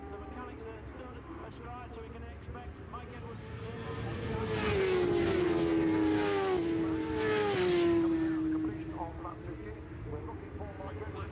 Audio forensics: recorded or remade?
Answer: recorded